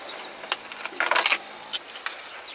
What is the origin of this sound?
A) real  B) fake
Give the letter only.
A